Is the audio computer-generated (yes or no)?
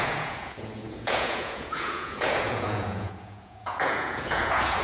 yes